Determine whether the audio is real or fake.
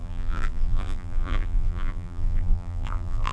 fake